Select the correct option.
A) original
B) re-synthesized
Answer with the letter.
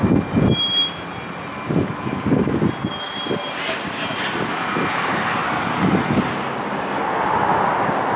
A